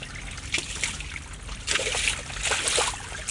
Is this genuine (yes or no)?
yes